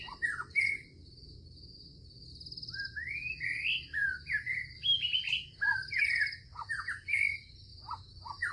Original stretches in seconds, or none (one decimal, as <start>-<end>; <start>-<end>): 0.0-8.5